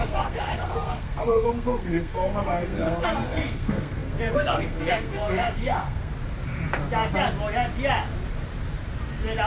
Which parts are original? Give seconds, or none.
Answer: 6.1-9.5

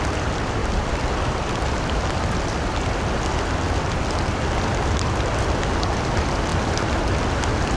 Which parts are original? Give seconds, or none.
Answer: 0.0-7.8

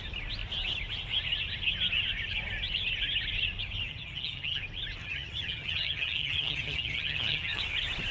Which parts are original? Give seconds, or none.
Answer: 0.0-3.9; 4.6-5.0; 7.6-8.1

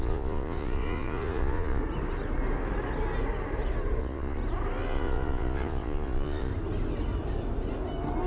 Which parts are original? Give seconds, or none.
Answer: 1.8-4.0; 4.4-4.9; 6.5-8.3

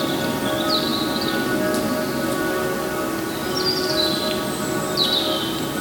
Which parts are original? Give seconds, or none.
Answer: 0.9-2.2

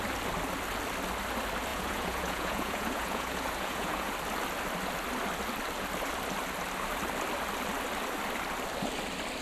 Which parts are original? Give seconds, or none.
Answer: 0.0-1.7; 4.1-9.4